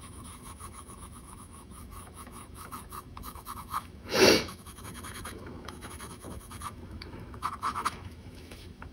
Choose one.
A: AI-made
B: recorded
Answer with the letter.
A